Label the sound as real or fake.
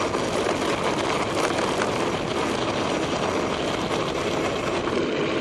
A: real